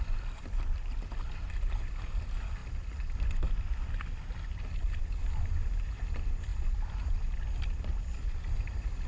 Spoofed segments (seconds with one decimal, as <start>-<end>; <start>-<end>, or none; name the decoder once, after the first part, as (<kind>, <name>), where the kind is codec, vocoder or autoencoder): none

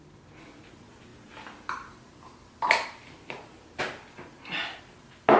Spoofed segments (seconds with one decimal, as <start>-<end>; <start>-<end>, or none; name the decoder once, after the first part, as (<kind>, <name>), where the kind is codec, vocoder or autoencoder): none

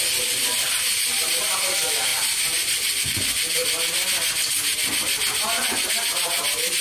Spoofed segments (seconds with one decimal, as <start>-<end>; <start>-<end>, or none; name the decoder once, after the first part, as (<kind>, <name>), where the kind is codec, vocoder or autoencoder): 0.0-2.1 (vocoder, BigVGAN v2); 3.0-3.6; 5.9-6.8

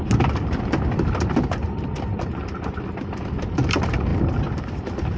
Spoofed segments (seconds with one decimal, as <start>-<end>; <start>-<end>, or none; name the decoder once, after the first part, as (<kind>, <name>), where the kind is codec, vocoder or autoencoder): none

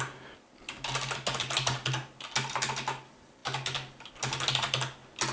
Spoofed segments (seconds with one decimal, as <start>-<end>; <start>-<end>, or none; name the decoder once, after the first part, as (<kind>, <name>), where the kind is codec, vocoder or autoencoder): none

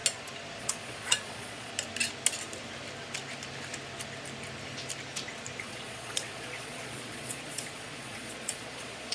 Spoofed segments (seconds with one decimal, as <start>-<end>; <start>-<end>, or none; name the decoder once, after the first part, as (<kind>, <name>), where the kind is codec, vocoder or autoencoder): 0.6-1.7 (vocoder, Vocos); 5.6-9.1